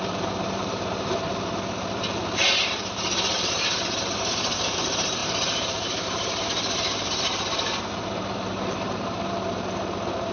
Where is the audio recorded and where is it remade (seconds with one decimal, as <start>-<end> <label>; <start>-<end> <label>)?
0.0-10.3 remade